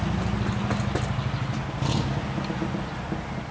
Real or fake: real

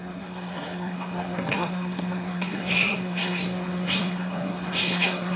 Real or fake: fake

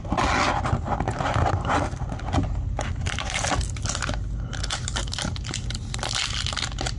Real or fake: real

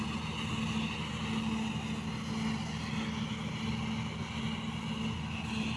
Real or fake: real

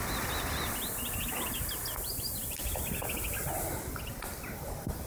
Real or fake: real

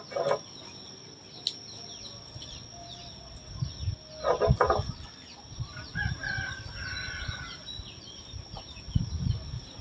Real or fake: real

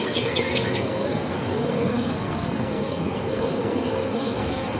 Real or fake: fake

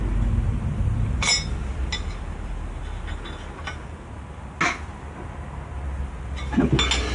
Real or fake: real